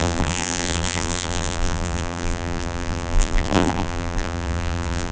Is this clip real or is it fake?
fake